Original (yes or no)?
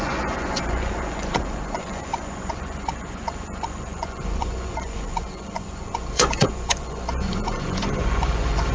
no